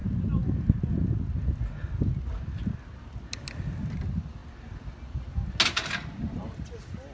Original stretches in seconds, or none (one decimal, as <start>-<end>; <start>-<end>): 0.0-7.1